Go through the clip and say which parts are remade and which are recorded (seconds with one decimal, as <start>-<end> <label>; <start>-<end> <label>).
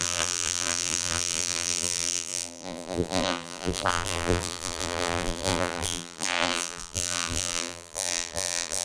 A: 0.0-8.8 remade